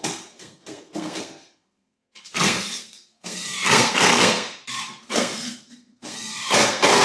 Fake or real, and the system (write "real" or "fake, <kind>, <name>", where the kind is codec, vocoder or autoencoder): fake, codec, SNAC